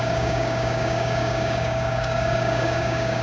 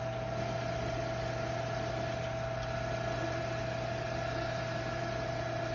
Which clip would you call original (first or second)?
second